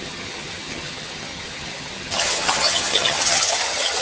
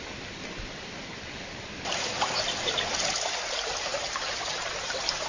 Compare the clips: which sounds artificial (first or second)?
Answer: first